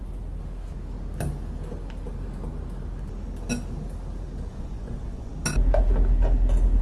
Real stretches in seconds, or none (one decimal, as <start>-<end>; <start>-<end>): 0.0-4.5; 5.3-6.8